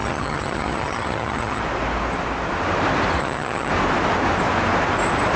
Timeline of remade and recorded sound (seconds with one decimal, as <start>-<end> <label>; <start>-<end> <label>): 0.0-1.6 remade; 1.6-3.2 recorded; 3.2-3.7 remade; 3.7-5.4 recorded